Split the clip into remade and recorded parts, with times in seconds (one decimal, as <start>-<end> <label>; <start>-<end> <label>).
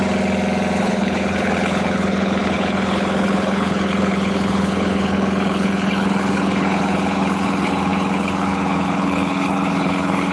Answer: 0.0-0.8 recorded; 0.8-10.3 remade